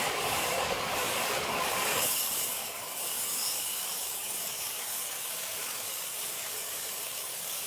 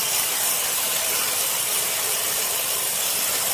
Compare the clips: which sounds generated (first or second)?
first